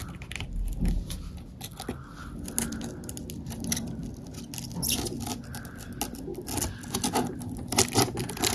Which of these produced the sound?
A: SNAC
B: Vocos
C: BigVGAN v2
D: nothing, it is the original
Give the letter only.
D